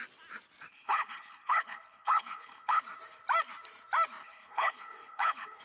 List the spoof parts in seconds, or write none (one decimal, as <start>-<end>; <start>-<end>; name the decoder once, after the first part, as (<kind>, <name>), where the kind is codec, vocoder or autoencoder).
0.7-2.8 (codec, HILCodec); 4.2-5.6